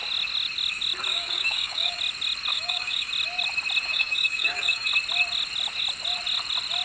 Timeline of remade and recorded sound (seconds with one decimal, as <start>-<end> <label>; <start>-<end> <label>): 0.0-1.1 recorded; 1.1-2.0 remade; 2.0-2.5 recorded; 2.5-3.1 remade; 3.1-3.8 recorded; 3.8-4.9 remade; 4.9-6.8 recorded